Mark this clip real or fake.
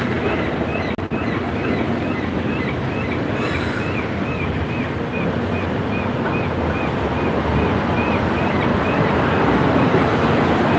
real